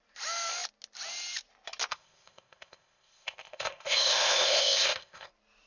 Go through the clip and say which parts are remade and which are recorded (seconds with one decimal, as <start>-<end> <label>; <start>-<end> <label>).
0.0-1.9 recorded; 1.9-5.3 remade; 5.3-5.7 recorded